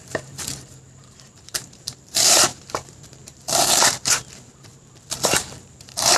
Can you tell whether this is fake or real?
fake